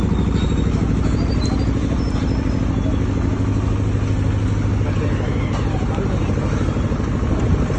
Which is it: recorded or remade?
recorded